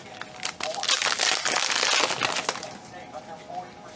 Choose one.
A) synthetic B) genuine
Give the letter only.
B